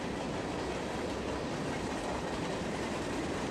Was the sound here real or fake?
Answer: real